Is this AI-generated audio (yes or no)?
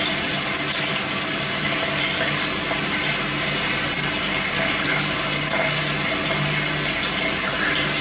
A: no